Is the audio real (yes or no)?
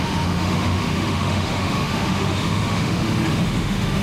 no